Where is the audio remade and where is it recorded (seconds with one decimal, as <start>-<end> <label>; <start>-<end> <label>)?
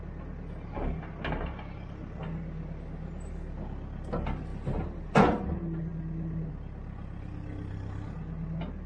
0.0-4.5 recorded; 4.5-5.4 remade; 5.4-8.9 recorded